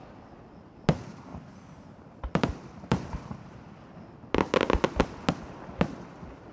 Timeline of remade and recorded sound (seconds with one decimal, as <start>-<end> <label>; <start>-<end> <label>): 0.0-1.3 recorded; 1.3-3.9 remade; 3.9-6.5 recorded